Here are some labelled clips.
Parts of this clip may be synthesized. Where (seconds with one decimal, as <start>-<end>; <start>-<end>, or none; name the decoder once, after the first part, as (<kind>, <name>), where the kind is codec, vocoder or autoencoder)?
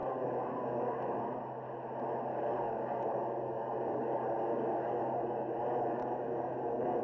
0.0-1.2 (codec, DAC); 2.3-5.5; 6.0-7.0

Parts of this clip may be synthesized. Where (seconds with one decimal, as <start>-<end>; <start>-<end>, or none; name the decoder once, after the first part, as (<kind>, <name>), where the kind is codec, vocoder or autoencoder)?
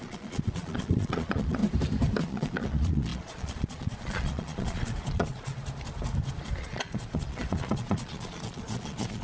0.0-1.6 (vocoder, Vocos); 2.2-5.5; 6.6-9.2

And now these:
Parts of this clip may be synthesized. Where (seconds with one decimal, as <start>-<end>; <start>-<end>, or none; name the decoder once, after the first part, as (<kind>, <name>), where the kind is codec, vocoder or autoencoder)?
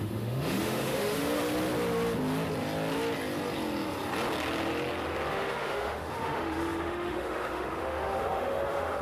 0.0-1.4 (autoencoder, DAC-VAE); 5.3-9.0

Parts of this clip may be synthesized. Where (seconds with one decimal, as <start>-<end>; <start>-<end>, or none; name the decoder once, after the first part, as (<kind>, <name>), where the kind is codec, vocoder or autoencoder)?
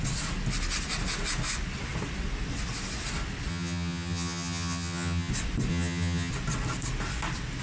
3.5-5.3 (vocoder, HiFi-GAN); 5.7-6.3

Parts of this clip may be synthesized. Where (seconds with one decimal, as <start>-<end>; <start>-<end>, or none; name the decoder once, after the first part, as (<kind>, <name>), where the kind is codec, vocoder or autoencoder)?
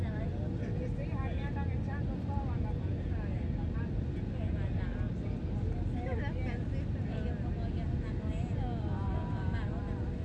none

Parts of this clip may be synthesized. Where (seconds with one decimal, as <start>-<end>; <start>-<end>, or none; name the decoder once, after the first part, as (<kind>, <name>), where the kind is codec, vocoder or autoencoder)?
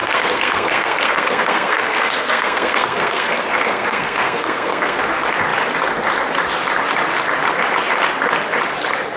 0.0-5.0 (codec, SNAC)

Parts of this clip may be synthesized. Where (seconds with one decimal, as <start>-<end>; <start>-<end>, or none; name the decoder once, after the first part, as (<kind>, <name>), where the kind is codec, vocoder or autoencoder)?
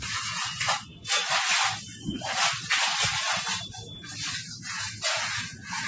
0.0-1.2 (vocoder, Vocos); 4.7-5.9